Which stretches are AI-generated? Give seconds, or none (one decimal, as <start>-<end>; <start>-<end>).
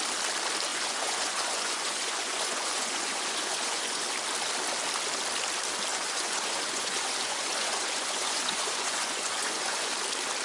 0.7-4.1; 5.9-9.9